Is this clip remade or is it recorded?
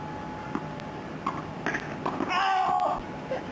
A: recorded